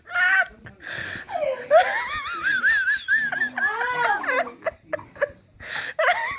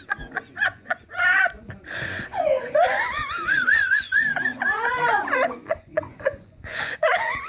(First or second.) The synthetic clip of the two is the second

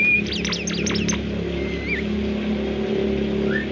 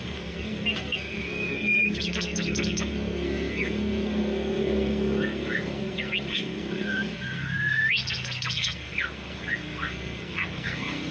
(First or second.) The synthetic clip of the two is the second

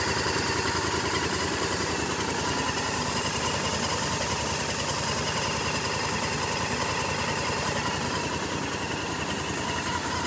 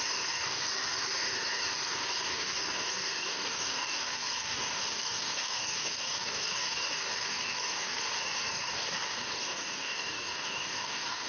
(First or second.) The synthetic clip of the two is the second